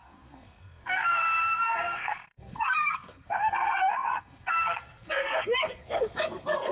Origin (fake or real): fake